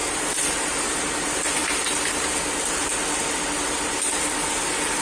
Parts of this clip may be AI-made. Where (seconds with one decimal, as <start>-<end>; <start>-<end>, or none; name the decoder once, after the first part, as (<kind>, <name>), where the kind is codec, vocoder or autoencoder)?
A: 0.0-1.0 (vocoder, BigVGAN v2)